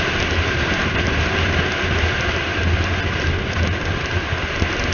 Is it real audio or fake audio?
real